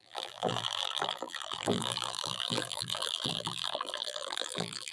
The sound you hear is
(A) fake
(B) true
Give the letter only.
A